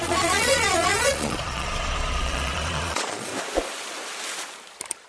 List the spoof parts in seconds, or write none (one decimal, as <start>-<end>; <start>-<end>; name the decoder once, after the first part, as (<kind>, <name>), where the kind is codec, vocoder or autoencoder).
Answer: 0.0-3.3 (vocoder, Vocos)